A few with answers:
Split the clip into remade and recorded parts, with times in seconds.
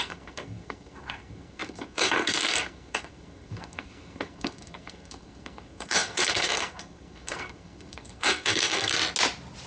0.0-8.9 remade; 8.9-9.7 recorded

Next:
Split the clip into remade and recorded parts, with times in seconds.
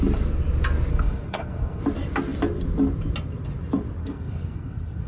0.0-0.9 recorded; 0.9-1.8 remade; 1.8-4.0 recorded; 4.0-5.1 remade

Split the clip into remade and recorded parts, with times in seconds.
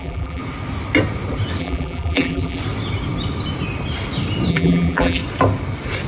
0.0-0.4 remade; 0.4-1.6 recorded; 1.6-2.6 remade; 2.6-4.5 recorded; 4.5-5.2 remade; 5.2-6.1 recorded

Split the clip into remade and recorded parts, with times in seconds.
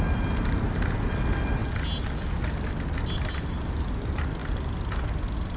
0.0-5.6 recorded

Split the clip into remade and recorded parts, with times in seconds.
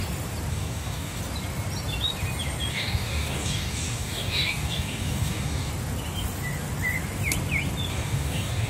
0.0-0.5 recorded; 0.5-1.2 remade; 1.2-2.7 recorded; 2.7-5.7 remade; 5.7-7.9 recorded; 7.9-8.7 remade